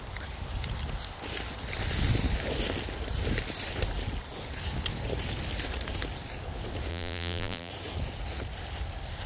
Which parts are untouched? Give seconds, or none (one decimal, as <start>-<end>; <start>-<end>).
0.0-6.9; 7.7-9.3